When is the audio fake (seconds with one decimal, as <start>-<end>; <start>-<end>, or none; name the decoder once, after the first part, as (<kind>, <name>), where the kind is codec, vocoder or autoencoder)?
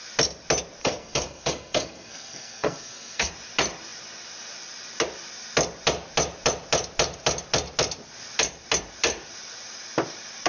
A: 0.8-3.3 (codec, SNAC)